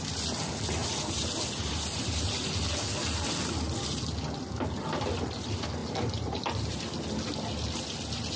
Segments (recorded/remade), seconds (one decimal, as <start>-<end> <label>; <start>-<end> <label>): 0.0-0.8 recorded; 0.8-2.3 remade; 2.3-5.8 recorded; 5.8-6.8 remade; 6.8-8.4 recorded